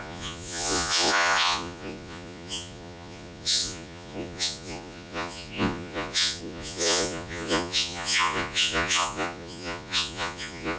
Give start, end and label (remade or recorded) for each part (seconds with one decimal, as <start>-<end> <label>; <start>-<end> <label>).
0.0-10.8 remade